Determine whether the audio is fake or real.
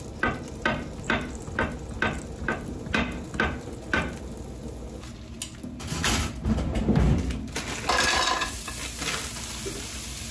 real